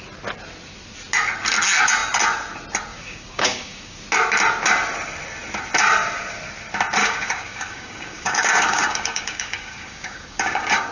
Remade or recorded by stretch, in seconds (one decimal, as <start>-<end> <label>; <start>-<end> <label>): 0.0-2.9 recorded; 2.9-4.0 remade; 4.0-7.0 recorded; 7.0-10.9 remade